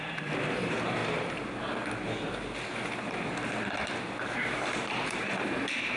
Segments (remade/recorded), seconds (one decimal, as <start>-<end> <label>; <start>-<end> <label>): 0.0-1.0 remade; 1.0-4.6 recorded; 4.6-6.0 remade